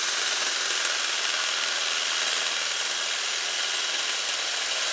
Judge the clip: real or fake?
real